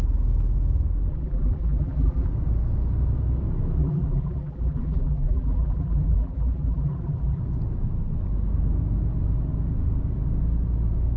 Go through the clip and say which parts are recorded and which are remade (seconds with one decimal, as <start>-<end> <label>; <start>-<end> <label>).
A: 0.0-1.1 recorded; 1.1-2.3 remade; 2.3-3.8 recorded; 3.8-7.4 remade; 7.4-11.2 recorded